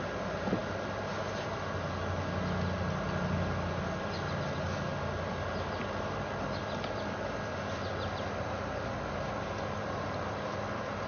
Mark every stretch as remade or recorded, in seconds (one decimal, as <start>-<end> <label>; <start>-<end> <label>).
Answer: 0.0-11.1 recorded